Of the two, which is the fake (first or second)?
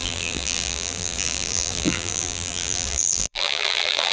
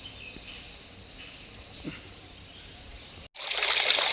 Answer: first